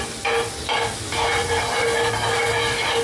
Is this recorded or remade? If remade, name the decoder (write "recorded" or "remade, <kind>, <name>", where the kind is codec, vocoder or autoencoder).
recorded